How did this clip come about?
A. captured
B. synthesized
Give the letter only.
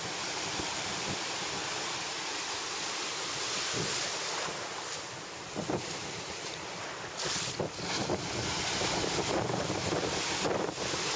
A